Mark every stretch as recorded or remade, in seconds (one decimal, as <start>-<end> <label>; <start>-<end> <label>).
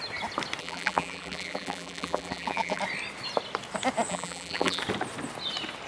0.0-0.6 recorded; 0.6-2.8 remade; 2.8-4.1 recorded; 4.1-4.8 remade; 4.8-5.9 recorded